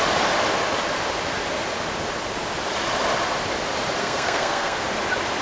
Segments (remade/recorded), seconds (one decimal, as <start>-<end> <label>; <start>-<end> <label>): 0.0-4.0 recorded; 4.0-4.8 remade; 4.8-5.4 recorded